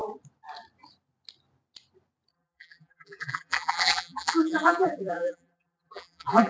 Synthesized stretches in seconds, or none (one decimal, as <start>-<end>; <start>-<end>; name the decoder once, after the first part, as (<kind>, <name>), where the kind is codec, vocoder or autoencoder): 2.3-6.5 (vocoder, BigVGAN v2)